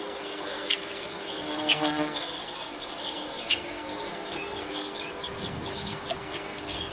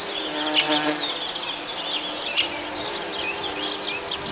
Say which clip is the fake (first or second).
first